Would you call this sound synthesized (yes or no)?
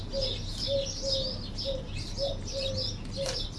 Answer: no